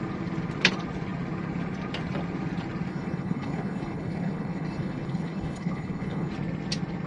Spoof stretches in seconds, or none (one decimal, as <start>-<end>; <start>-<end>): 2.9-6.3